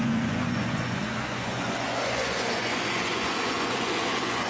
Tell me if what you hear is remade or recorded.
remade